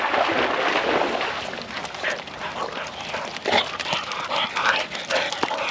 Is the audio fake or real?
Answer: real